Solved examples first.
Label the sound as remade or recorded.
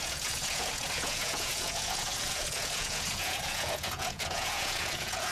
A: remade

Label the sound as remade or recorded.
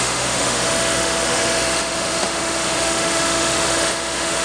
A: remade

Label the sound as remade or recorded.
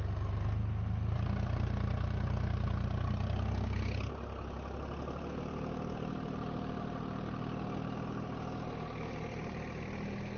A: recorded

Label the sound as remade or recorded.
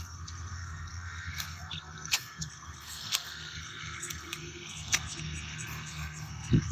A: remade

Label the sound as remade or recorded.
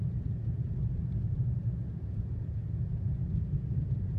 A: remade